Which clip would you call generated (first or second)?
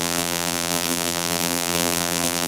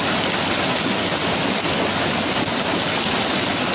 first